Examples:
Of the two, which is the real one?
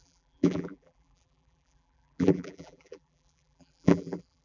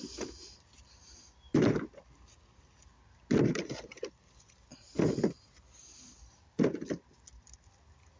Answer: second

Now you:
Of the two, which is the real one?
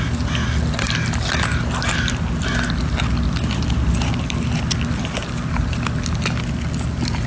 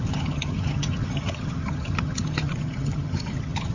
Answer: first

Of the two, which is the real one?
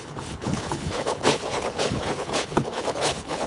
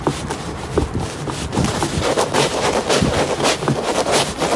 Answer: second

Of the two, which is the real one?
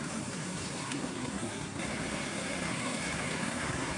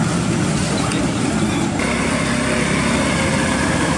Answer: second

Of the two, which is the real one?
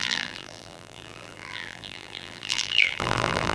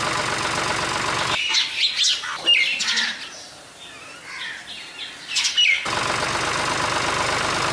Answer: second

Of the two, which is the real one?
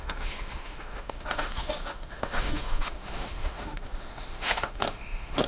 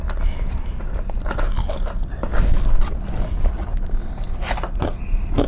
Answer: second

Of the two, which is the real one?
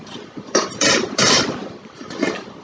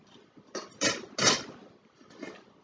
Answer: second